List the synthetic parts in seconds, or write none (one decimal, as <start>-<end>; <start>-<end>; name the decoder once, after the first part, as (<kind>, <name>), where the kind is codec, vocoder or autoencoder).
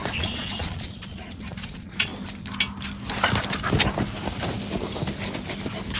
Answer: 0.0-2.1 (vocoder, Vocos)